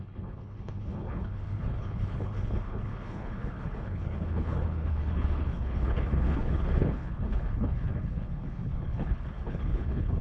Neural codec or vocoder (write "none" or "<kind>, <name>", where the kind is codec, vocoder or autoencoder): codec, HILCodec